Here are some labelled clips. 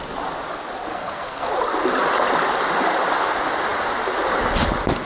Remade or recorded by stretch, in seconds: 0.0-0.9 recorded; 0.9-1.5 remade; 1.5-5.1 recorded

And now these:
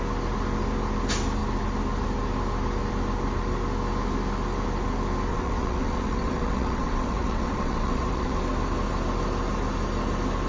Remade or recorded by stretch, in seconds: 0.0-5.3 recorded; 5.3-8.4 remade; 8.4-10.5 recorded